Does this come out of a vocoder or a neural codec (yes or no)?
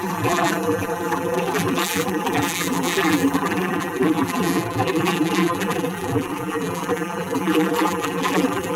yes